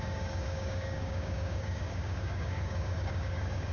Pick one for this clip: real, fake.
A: fake